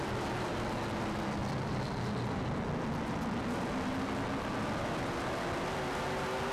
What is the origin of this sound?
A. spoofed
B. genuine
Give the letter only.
B